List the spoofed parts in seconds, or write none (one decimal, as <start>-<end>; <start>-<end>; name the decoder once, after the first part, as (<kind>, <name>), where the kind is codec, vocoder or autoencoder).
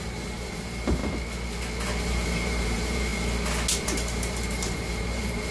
0.0-1.0 (vocoder, BigVGAN v2); 2.0-3.1; 3.8-5.5